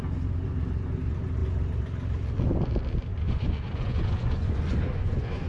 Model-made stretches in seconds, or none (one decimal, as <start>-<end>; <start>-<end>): 3.1-5.5